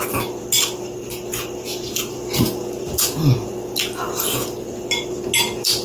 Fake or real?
real